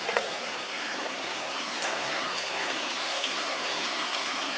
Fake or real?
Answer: fake